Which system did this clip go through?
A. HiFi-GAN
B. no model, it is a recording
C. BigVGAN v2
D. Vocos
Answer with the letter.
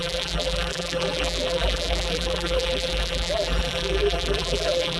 C